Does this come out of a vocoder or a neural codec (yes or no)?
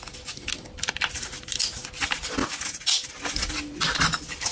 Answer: no